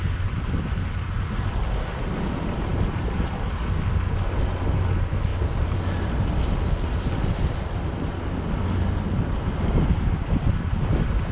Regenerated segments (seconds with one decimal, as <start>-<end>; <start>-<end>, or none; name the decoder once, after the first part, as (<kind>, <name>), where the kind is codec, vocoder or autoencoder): none